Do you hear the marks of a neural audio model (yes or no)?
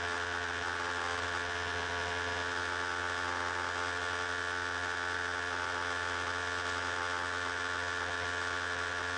no